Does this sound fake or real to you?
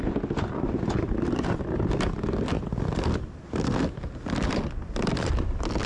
real